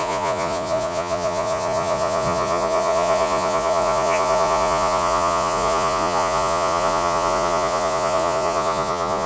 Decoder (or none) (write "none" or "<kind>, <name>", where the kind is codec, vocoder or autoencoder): vocoder, Vocos